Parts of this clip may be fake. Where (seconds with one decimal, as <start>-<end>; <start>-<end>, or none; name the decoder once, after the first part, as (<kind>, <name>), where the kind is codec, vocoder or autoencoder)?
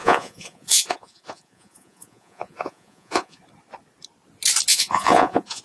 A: 0.0-3.4 (vocoder, Vocos); 4.7-5.6